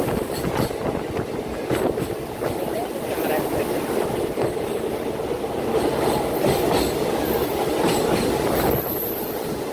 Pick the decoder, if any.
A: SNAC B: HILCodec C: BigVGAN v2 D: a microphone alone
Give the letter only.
D